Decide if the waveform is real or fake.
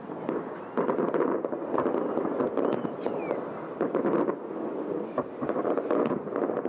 real